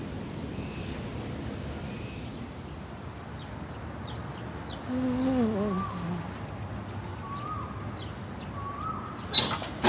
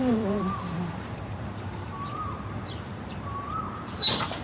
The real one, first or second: first